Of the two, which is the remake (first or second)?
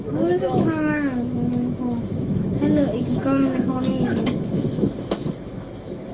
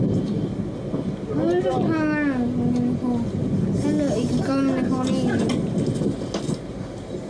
first